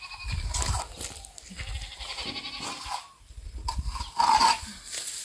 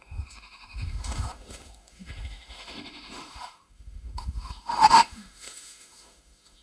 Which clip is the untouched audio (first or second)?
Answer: first